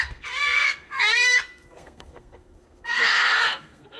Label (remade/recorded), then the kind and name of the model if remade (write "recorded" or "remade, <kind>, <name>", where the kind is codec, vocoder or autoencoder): remade, codec, SNAC